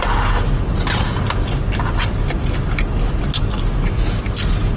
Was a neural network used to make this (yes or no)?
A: no